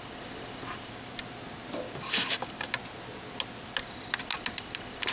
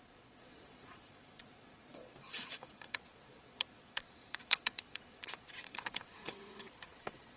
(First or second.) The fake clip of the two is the second